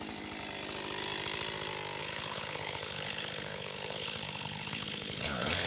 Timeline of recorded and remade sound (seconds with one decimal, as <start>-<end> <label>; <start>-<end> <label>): 0.0-2.0 recorded; 2.0-5.7 remade